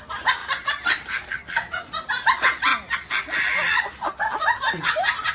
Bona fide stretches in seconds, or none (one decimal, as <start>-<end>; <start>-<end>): 0.0-5.3